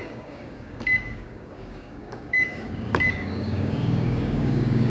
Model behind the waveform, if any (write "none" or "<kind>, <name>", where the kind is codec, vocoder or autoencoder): codec, DAC